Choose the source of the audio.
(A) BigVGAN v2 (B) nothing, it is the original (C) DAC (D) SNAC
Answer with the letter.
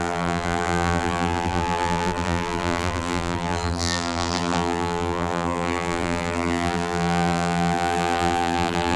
A